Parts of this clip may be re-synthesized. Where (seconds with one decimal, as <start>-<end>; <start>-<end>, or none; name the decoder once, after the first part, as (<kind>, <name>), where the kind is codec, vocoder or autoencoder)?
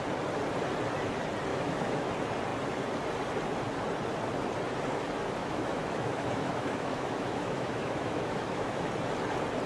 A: 1.5-2.1 (autoencoder, DAC-VAE); 5.4-8.9